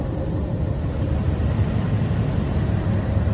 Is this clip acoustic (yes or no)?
yes